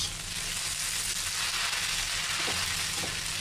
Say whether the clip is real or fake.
real